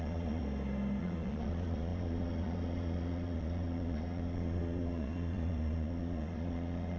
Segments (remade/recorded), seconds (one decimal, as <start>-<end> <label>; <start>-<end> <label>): 0.0-0.4 remade; 0.4-1.0 recorded; 1.0-7.0 remade

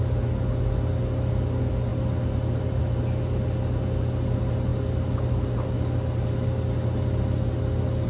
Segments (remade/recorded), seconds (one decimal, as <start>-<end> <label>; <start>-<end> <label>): 0.0-8.1 recorded